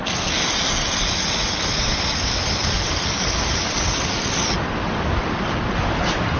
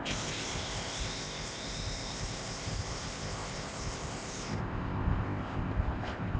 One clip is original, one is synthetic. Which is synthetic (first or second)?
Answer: second